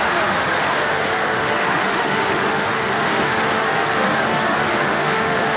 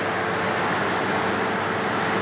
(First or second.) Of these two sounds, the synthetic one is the first